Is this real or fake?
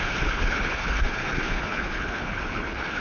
fake